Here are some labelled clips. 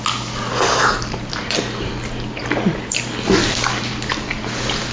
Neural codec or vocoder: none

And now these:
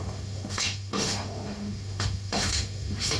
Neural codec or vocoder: autoencoder, DAC-VAE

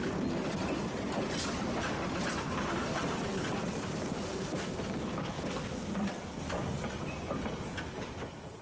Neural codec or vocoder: none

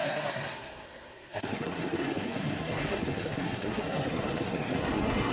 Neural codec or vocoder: codec, SNAC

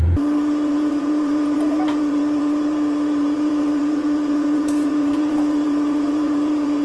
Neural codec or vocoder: vocoder, Vocos